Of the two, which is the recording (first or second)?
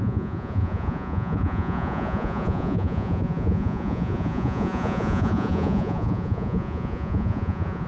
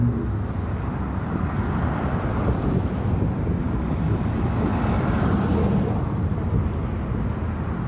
second